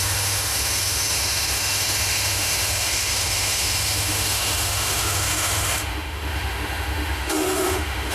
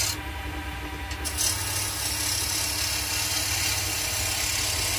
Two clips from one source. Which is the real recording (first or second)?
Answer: second